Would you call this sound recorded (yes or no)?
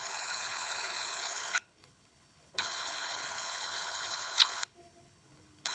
no